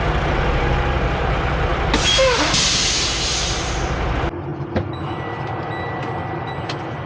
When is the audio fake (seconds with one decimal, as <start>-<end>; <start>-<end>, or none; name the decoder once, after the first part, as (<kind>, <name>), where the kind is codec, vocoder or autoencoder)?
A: none